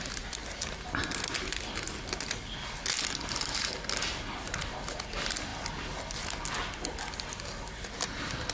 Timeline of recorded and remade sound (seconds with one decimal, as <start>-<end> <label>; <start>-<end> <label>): 0.0-8.5 recorded

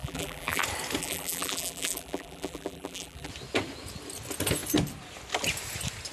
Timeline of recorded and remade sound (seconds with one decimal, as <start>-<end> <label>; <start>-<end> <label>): 0.0-0.6 remade; 0.6-1.0 recorded; 1.0-3.3 remade; 3.3-6.1 recorded

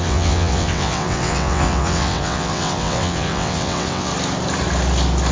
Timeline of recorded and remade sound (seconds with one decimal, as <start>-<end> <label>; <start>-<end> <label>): 0.0-4.1 remade; 4.1-5.3 recorded

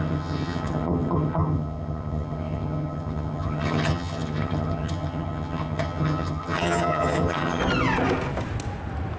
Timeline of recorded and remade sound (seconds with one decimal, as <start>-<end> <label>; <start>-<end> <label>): 0.0-7.6 remade; 7.6-9.2 recorded

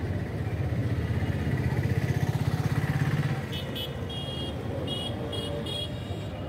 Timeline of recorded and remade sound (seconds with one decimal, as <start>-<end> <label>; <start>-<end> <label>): 0.0-0.8 remade; 0.8-4.7 recorded; 4.7-5.3 remade; 5.3-6.0 recorded; 6.0-6.5 remade

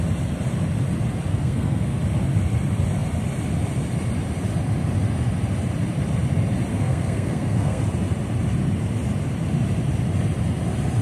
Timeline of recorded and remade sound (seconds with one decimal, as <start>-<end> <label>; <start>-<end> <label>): 0.0-1.3 recorded; 1.3-2.0 remade; 2.0-6.7 recorded; 6.7-7.8 remade; 7.8-11.0 recorded

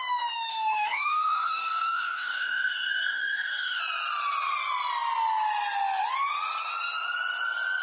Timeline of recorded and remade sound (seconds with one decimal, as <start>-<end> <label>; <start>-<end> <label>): 0.0-0.5 recorded; 0.5-3.8 remade; 3.8-7.8 recorded